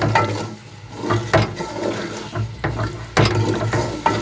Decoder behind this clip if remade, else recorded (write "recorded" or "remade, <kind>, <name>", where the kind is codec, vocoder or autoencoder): recorded